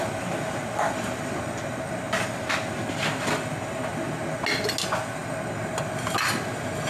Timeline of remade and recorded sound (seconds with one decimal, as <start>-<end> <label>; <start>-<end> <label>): 0.0-6.9 recorded